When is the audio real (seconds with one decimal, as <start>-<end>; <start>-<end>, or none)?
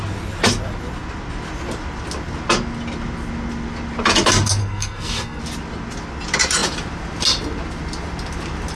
0.0-4.6; 5.4-8.8